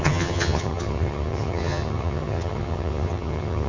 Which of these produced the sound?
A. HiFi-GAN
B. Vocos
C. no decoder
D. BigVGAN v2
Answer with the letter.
A